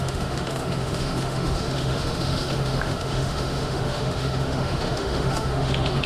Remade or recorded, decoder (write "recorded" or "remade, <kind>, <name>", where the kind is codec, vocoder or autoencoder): remade, autoencoder, DAC-VAE